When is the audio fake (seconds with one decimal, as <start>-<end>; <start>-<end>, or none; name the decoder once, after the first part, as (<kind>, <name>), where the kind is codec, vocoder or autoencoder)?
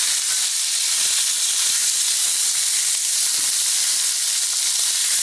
none